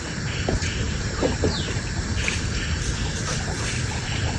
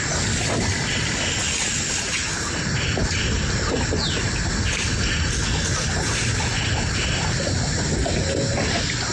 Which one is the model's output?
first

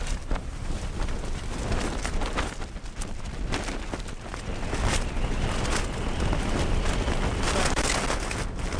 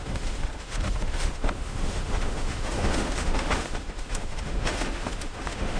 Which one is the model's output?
second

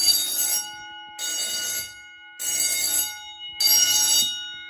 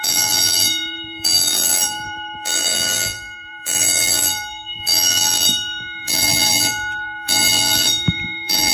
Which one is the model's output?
second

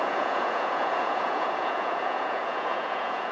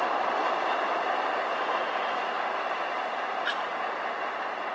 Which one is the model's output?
first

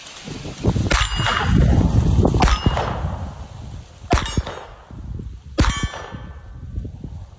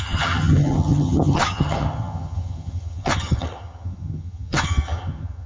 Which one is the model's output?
second